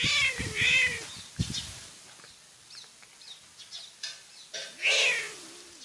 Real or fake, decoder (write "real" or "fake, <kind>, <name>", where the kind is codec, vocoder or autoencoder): real